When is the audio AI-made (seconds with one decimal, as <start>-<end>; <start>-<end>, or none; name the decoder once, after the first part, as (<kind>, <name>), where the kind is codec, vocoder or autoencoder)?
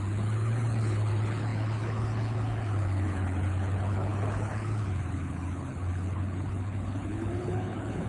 0.0-8.1 (codec, HILCodec)